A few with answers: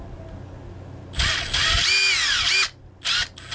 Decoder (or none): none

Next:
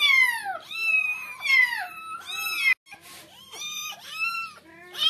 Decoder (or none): none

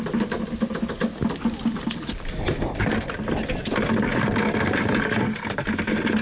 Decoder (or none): none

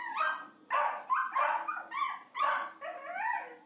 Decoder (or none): none